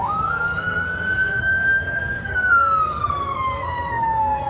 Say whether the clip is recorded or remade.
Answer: remade